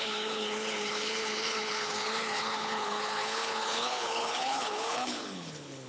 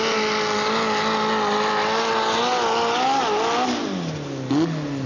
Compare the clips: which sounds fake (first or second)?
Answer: first